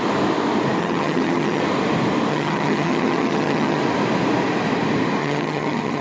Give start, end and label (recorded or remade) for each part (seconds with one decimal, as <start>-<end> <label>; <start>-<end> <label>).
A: 0.0-0.8 recorded; 0.8-1.6 remade; 1.6-2.3 recorded; 2.3-3.8 remade; 3.8-5.2 recorded; 5.2-6.0 remade